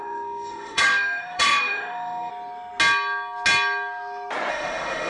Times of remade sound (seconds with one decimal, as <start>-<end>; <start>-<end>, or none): 0.0-2.3; 4.5-5.1